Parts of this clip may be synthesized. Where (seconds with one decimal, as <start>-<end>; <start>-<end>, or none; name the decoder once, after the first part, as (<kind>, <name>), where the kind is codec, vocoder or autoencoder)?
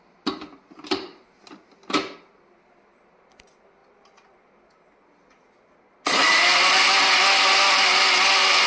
none